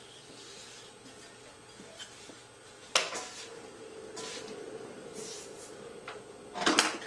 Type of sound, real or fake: real